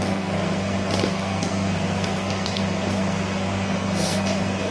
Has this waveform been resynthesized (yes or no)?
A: yes